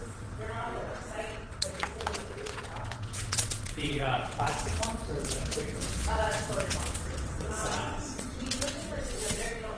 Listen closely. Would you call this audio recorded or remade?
remade